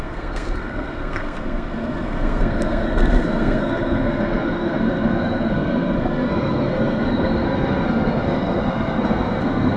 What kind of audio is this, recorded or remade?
remade